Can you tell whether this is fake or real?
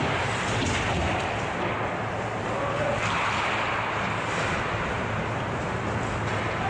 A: real